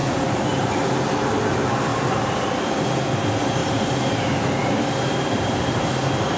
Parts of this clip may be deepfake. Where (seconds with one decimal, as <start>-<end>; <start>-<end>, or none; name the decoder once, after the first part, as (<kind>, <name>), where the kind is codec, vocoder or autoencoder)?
0.0-0.7 (vocoder, BigVGAN v2); 1.9-2.4; 3.6-5.9